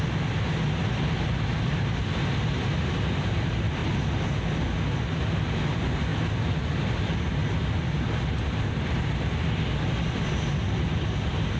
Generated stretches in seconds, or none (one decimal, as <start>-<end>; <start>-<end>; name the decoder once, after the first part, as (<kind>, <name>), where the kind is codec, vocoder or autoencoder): none